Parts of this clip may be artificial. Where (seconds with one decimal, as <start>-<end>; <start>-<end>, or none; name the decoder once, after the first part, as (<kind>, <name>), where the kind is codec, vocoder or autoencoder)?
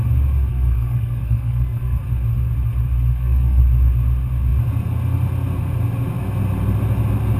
0.5-2.0 (codec, SNAC); 3.1-3.6